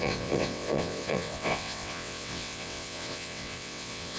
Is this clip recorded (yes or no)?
no